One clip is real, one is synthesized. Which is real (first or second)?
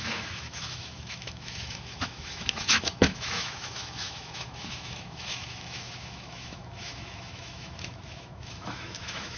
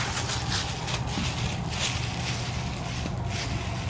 second